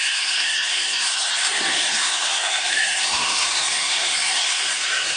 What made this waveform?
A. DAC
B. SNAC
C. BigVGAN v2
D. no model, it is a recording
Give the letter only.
B